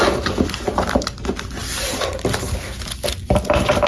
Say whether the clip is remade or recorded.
recorded